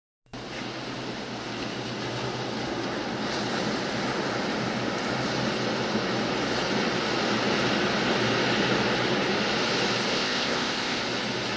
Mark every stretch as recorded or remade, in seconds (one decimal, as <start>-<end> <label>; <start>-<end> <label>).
0.0-10.1 recorded; 10.1-11.0 remade; 11.0-11.6 recorded